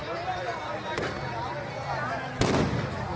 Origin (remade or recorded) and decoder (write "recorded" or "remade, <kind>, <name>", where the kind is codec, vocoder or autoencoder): recorded